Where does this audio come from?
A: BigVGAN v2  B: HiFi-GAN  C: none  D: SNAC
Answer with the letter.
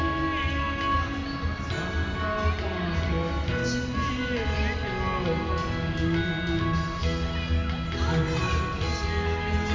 C